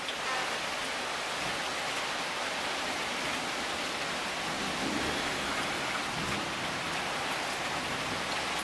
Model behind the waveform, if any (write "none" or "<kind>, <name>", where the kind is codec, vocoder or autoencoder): none